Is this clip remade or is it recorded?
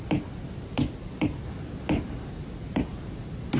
recorded